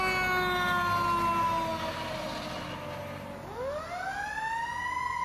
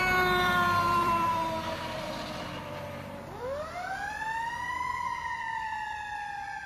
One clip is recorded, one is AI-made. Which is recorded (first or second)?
first